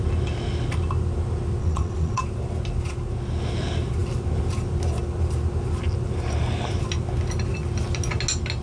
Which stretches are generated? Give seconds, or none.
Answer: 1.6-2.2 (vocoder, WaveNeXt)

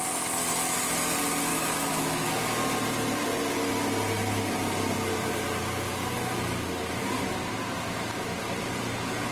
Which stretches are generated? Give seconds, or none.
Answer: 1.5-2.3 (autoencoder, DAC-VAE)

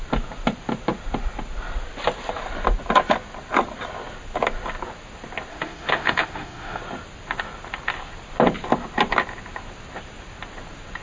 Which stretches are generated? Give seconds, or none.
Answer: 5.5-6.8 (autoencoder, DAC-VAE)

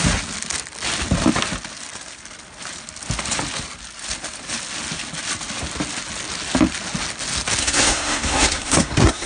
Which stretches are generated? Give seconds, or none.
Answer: 7.6-9.3 (codec, SNAC)